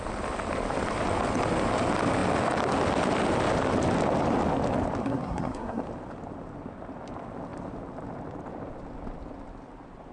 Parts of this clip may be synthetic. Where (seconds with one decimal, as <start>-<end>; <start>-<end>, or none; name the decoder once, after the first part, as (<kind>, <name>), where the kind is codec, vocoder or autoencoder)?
5.0-5.8 (codec, SNAC)